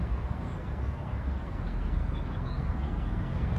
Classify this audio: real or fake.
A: fake